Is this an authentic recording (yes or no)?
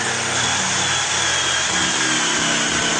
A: yes